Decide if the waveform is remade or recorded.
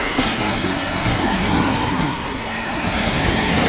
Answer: remade